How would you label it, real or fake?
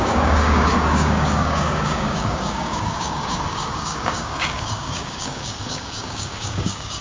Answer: fake